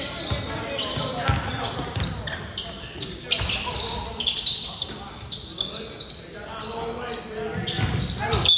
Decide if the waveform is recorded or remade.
recorded